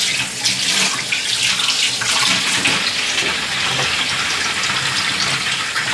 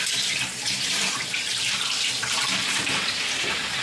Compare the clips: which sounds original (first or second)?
first